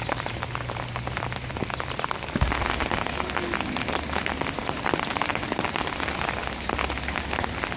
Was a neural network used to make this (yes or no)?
no